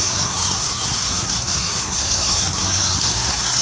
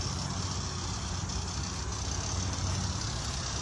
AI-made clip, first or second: first